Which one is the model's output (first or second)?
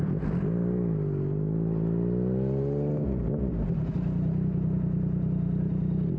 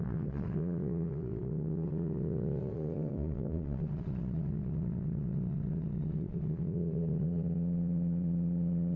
second